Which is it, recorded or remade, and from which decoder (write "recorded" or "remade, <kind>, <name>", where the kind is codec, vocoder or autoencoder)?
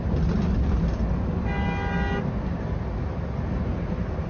recorded